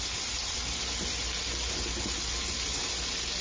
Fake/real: real